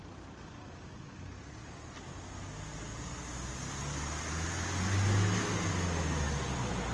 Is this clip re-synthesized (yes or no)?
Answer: no